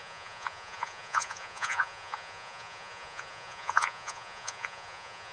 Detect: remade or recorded remade